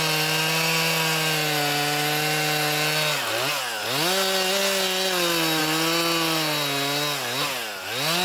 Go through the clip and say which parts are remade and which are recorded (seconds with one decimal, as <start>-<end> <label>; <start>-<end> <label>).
0.0-8.2 recorded